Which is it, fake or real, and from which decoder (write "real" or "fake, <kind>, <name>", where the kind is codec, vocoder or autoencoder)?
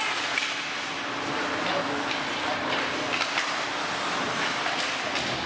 real